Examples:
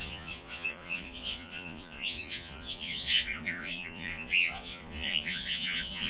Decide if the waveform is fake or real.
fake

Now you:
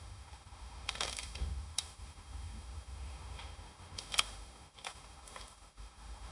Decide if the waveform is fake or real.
fake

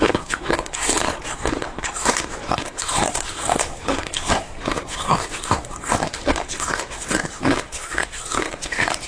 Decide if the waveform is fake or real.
fake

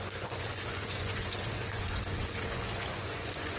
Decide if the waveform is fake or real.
fake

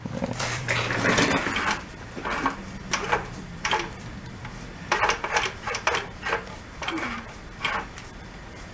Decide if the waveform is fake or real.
fake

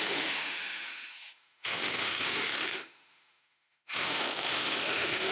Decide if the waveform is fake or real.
fake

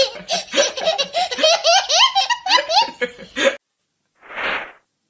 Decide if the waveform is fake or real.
real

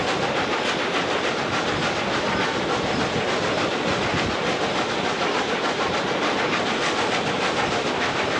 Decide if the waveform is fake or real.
real